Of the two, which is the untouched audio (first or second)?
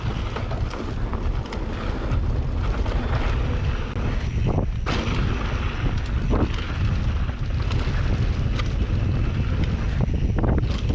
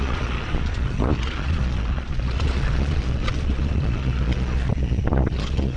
first